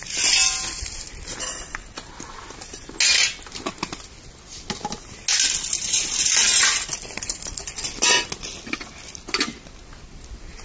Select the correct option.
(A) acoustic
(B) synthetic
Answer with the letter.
A